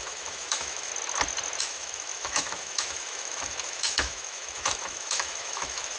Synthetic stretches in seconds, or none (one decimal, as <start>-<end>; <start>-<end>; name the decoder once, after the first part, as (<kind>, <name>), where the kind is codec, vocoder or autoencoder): 0.0-0.9 (autoencoder, DAC-VAE); 1.6-6.0